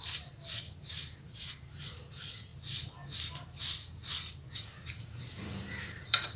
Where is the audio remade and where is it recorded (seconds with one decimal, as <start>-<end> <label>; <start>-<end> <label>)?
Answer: 0.0-2.5 remade; 2.5-3.6 recorded; 3.6-4.0 remade; 4.0-4.9 recorded; 4.9-6.4 remade